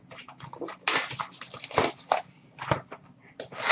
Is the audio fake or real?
real